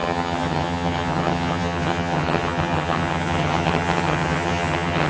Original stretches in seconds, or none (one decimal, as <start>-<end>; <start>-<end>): none

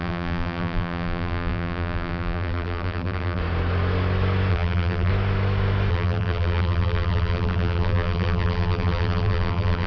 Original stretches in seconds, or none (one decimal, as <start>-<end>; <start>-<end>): 3.4-4.5; 5.1-5.9

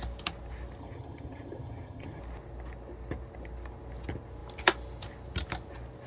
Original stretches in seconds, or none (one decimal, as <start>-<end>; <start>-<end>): 0.0-0.8; 2.2-6.1

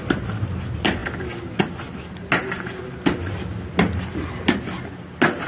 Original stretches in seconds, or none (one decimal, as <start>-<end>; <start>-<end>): 0.0-5.5

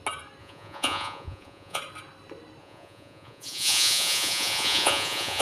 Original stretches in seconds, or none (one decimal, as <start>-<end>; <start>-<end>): 0.0-0.4; 1.8-2.6

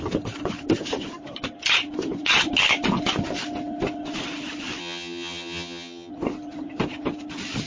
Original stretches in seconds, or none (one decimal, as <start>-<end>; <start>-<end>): 0.0-4.8; 6.1-7.7